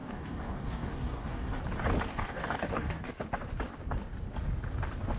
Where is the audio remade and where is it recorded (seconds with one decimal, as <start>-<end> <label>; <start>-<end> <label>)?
0.0-1.6 remade; 1.6-2.1 recorded; 2.1-3.1 remade; 3.1-5.2 recorded